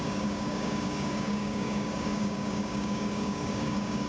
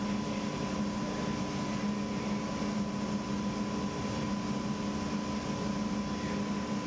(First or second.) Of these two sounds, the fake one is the first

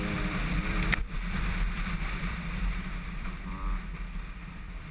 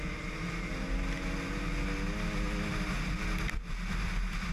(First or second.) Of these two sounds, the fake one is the first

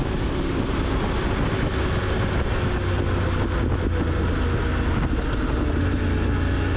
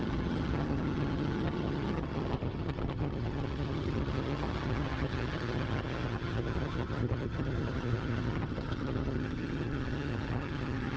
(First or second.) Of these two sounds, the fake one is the second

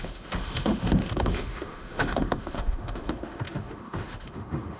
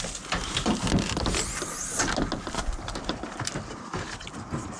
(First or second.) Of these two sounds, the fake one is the first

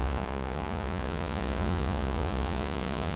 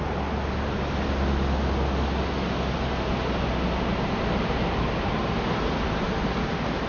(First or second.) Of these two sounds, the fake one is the first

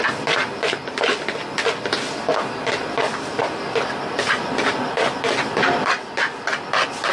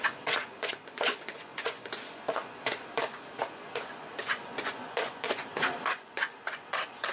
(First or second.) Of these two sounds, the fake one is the second